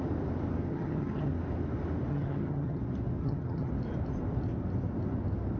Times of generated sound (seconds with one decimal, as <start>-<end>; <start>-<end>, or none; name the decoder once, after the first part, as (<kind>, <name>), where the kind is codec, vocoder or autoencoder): 0.7-1.3 (vocoder, HiFi-GAN); 2.1-2.8; 3.2-3.7